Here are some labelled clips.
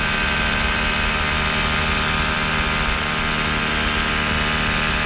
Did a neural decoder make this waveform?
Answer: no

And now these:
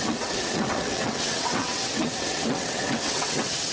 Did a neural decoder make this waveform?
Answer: yes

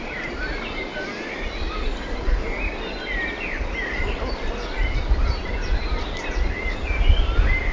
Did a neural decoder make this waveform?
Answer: no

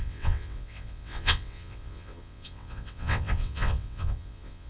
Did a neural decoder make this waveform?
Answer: yes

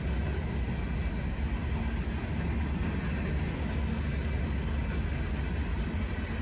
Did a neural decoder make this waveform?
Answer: no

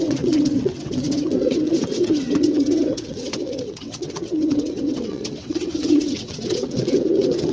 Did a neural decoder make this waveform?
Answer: yes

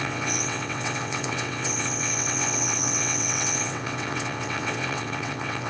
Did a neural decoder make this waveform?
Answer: yes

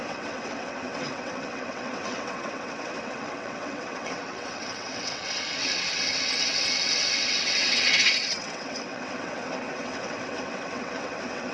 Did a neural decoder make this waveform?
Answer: yes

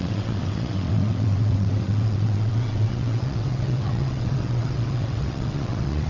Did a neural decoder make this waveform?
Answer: yes